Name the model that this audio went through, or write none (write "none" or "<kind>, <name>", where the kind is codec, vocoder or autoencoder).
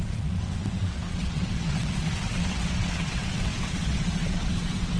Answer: vocoder, WaveNeXt